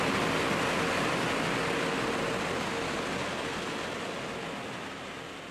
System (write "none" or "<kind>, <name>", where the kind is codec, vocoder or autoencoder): none